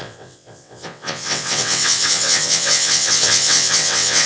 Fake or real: fake